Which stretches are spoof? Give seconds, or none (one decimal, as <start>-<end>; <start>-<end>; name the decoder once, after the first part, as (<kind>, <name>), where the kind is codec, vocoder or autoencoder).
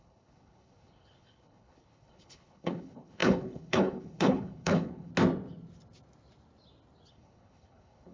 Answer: 0.0-5.1 (codec, HILCodec); 7.1-8.1